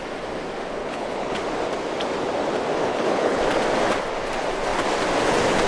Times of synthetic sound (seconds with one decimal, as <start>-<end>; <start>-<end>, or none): 0.8-1.4; 2.9-3.4